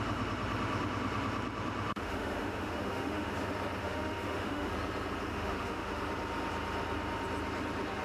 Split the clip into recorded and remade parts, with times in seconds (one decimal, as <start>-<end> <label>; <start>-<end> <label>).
0.0-1.9 recorded; 1.9-3.3 remade; 3.3-3.8 recorded; 3.8-4.7 remade; 4.7-5.3 recorded; 5.3-6.0 remade; 6.0-8.0 recorded